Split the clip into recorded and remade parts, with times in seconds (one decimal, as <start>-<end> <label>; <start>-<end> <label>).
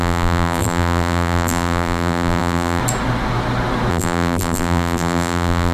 0.0-2.8 remade; 2.8-3.9 recorded; 3.9-5.7 remade